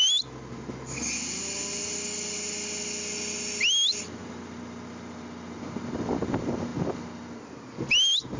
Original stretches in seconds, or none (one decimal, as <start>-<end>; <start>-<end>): 0.0-8.4